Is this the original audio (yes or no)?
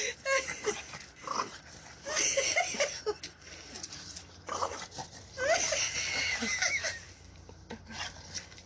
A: yes